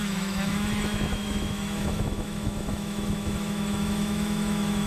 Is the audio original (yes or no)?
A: no